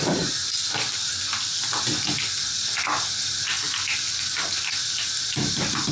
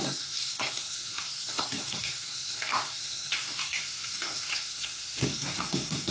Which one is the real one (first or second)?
first